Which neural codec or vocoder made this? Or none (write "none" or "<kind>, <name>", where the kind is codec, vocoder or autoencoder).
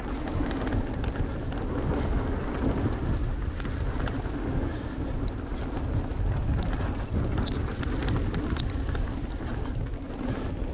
none